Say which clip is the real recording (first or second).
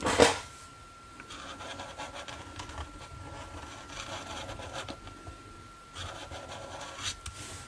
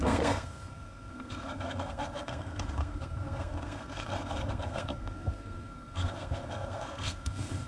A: first